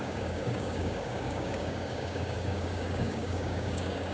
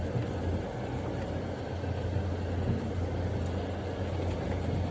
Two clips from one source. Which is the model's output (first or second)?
first